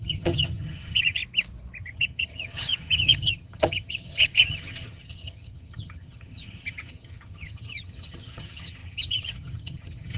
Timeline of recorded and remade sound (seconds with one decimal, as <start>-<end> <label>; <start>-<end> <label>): 0.0-1.2 remade; 1.2-1.8 recorded; 1.8-10.2 remade